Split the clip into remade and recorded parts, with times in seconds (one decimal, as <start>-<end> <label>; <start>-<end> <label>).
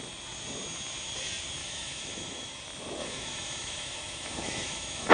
0.0-1.6 recorded; 1.6-2.5 remade; 2.5-3.0 recorded; 3.0-5.1 remade